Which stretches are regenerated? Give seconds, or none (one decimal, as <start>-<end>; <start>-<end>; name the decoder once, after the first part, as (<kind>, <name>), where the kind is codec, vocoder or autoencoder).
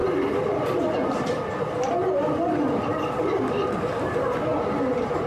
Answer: none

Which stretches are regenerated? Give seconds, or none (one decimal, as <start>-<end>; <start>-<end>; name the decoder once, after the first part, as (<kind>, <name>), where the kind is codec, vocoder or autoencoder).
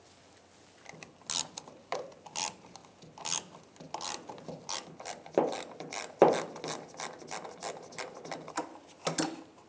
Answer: none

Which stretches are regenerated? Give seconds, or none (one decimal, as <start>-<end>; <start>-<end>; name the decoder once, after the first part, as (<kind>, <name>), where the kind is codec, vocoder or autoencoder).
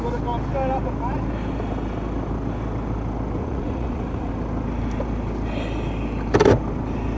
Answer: 3.4-4.3 (vocoder, Vocos)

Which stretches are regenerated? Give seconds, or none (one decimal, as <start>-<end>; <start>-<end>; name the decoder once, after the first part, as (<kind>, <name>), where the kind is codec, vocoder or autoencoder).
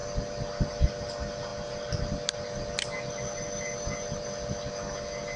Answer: none